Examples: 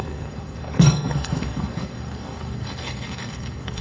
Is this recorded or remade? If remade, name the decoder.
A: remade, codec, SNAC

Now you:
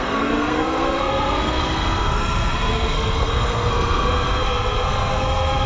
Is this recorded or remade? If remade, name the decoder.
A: remade, codec, SNAC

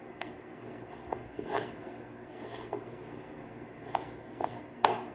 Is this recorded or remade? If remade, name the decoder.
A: remade, codec, SNAC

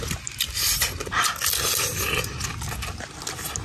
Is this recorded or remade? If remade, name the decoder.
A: recorded